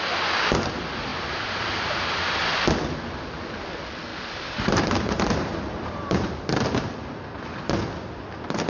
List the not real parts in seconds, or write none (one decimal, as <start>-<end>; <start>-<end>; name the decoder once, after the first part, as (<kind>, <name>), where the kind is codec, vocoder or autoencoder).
1.1-2.4 (vocoder, BigVGAN v2); 4.1-6.3